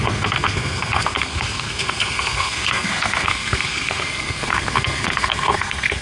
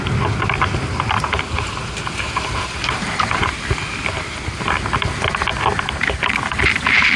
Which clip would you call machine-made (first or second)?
first